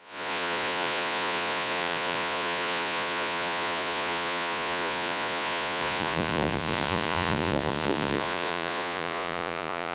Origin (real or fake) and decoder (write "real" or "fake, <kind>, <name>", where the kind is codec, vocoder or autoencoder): fake, vocoder, Vocos